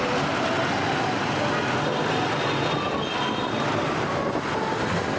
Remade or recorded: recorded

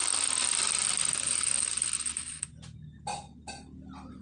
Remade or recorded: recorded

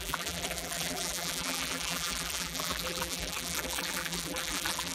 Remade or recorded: remade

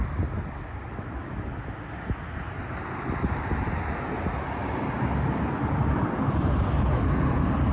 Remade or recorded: recorded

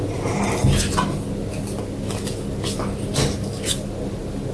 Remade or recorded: recorded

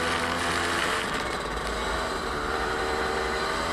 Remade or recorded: recorded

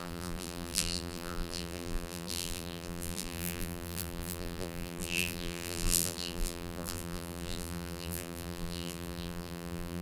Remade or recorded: remade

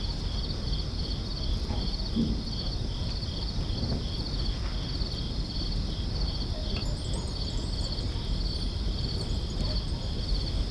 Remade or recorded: recorded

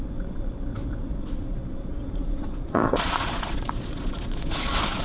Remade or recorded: remade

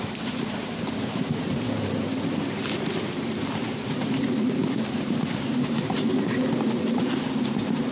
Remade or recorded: remade